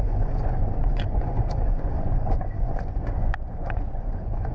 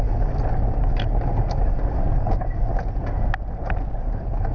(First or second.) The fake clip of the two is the first